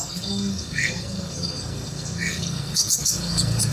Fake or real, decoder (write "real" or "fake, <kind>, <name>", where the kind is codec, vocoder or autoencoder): fake, codec, SNAC